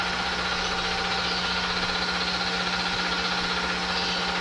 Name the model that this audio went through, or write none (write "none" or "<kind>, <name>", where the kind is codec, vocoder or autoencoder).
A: none